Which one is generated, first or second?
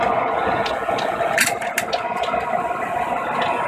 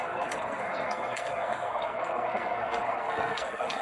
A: second